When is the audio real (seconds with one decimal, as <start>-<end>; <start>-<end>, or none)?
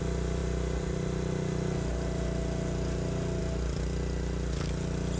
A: 0.0-5.2